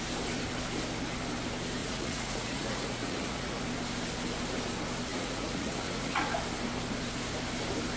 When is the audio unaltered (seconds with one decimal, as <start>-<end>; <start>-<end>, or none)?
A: 0.0-1.8; 3.6-5.1; 6.2-8.0